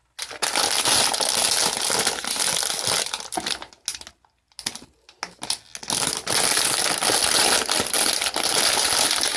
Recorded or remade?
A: recorded